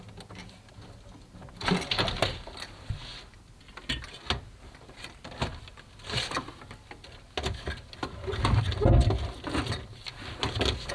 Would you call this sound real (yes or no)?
yes